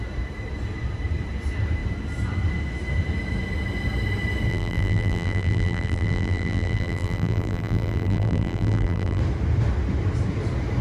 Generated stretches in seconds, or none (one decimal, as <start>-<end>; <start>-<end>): 4.5-9.2